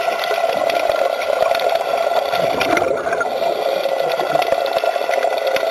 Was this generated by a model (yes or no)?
no